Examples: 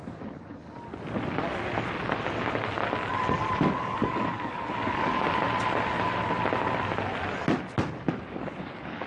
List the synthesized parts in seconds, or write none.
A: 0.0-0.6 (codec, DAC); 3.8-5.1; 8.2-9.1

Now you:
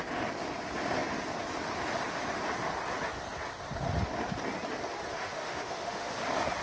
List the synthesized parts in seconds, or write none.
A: 5.1-6.1 (autoencoder, DAC-VAE)